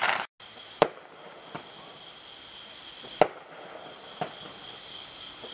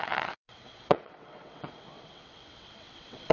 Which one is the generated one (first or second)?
second